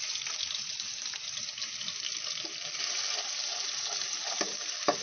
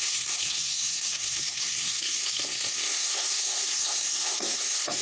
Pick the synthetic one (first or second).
second